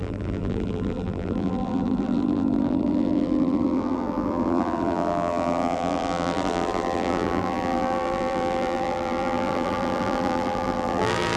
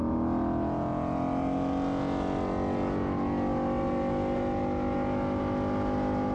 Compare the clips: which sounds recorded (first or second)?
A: second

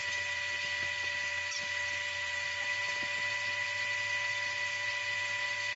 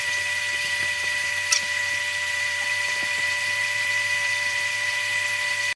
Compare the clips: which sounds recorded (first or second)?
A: first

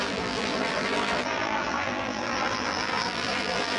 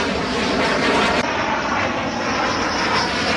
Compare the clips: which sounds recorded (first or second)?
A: second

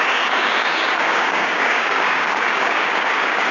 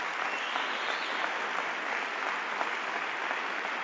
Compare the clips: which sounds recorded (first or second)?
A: second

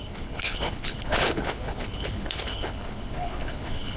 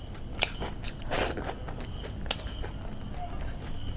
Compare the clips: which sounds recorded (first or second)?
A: second